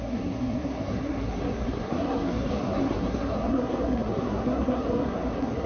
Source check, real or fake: fake